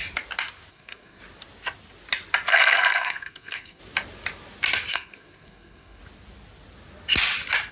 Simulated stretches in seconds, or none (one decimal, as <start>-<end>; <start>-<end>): 0.7-1.2; 2.5-3.8; 4.9-6.0